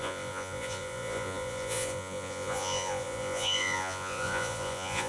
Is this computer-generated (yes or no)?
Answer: yes